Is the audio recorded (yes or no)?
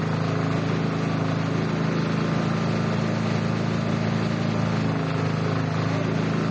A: yes